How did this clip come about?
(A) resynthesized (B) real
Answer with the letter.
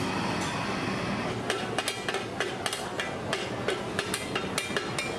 B